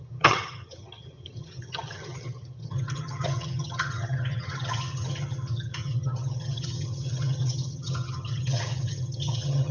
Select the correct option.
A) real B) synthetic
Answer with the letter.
B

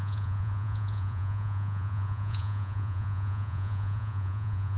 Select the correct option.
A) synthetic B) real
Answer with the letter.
A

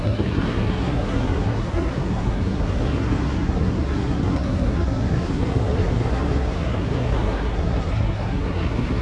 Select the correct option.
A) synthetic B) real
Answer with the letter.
A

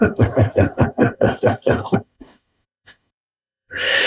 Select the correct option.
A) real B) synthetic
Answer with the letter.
B